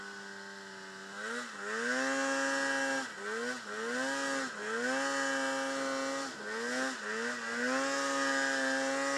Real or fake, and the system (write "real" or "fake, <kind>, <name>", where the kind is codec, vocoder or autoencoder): real